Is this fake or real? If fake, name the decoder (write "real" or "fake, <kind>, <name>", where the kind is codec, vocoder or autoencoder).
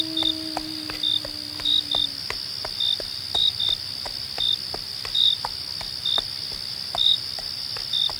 real